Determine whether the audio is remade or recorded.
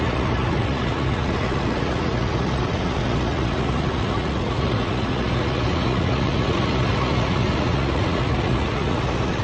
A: remade